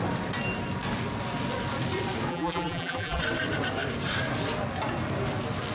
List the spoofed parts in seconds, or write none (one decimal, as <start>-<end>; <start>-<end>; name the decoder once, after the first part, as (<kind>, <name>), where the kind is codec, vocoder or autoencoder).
2.3-3.2 (vocoder, BigVGAN v2)